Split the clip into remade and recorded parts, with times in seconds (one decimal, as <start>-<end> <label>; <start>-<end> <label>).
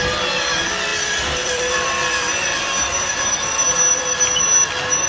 0.0-0.9 recorded; 0.9-4.0 remade; 4.0-5.1 recorded